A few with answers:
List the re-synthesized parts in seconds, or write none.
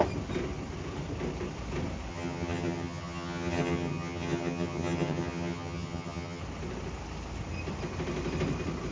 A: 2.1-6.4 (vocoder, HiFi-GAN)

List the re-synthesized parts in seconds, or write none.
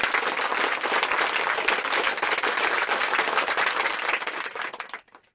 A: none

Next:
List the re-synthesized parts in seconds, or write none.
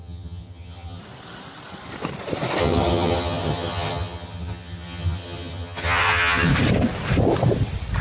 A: 0.0-1.0 (vocoder, HiFi-GAN); 2.6-6.5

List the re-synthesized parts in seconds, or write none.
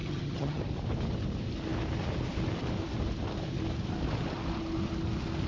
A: 0.0-0.6 (vocoder, HiFi-GAN)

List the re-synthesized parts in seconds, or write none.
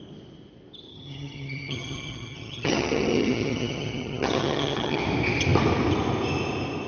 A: 0.9-5.0 (vocoder, HiFi-GAN)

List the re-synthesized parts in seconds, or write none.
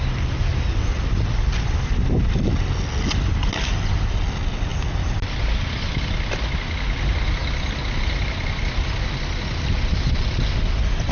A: none